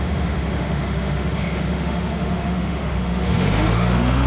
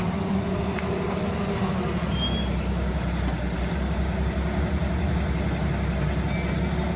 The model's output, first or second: first